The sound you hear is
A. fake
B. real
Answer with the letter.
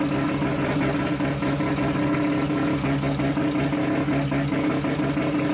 B